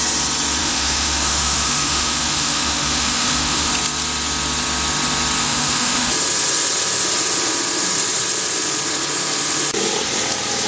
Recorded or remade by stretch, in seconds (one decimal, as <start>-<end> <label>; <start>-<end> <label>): 0.0-0.6 recorded; 0.6-3.7 remade; 3.7-5.4 recorded; 5.4-6.1 remade; 6.1-10.7 recorded